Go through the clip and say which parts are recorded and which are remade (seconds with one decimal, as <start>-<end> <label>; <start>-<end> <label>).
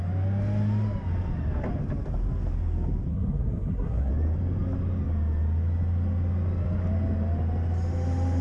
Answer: 0.0-3.1 recorded; 3.1-4.1 remade; 4.1-8.4 recorded